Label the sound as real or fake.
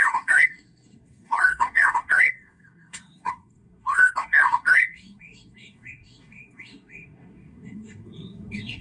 fake